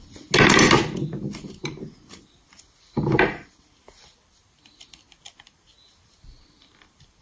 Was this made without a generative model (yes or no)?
yes